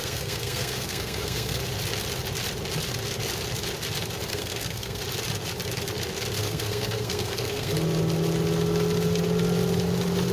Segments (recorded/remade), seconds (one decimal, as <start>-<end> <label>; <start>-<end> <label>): 0.0-1.6 remade; 1.6-4.3 recorded; 4.3-5.0 remade; 5.0-6.4 recorded; 6.4-7.7 remade; 7.7-10.3 recorded

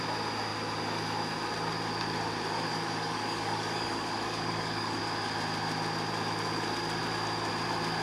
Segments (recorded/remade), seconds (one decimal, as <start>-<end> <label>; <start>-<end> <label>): 0.0-2.7 recorded; 2.7-5.0 remade; 5.0-8.0 recorded

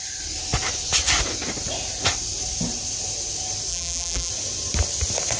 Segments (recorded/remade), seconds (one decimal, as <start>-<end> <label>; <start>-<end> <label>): 0.0-3.7 recorded; 3.7-4.3 remade; 4.3-5.4 recorded

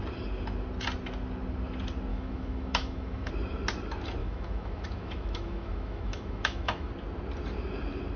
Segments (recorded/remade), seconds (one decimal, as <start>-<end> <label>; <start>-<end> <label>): 0.0-2.1 recorded; 2.1-3.3 remade; 3.3-4.2 recorded; 4.2-6.9 remade; 6.9-8.2 recorded

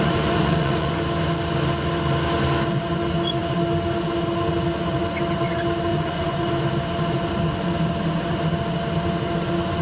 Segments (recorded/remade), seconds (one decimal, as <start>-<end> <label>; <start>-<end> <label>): 0.0-0.9 remade; 0.9-5.9 recorded; 5.9-6.5 remade; 6.5-9.8 recorded

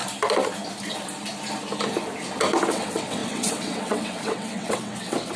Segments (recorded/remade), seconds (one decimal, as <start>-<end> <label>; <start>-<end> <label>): 0.0-2.7 recorded; 2.7-5.4 remade

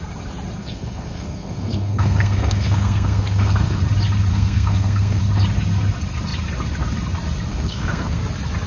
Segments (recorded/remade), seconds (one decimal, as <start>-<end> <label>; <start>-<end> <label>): 0.0-0.6 recorded; 0.6-3.8 remade; 3.8-4.3 recorded; 4.3-5.2 remade; 5.2-7.5 recorded; 7.5-8.2 remade; 8.2-8.7 recorded